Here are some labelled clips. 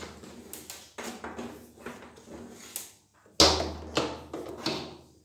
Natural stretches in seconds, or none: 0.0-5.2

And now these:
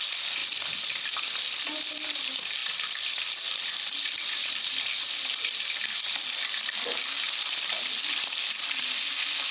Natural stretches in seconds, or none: 0.0-9.5

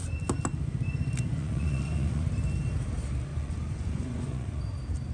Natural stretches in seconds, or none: 0.0-1.3; 2.2-3.3; 4.6-5.1

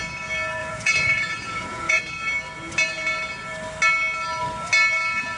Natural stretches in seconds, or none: 0.0-0.6; 2.0-5.4

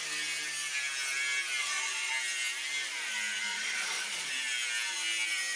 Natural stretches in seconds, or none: 0.0-1.6; 2.1-3.5; 4.3-5.6

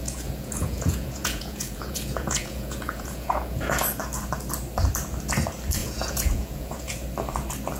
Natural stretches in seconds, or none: 3.7-5.8; 6.9-7.8

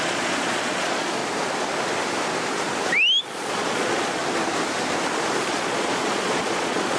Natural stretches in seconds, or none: 1.2-3.2; 4.2-5.4